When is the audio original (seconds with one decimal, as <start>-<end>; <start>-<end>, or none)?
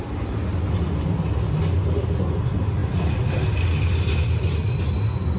0.0-5.4